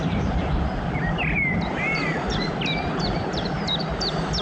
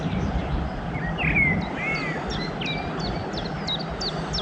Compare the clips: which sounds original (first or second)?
second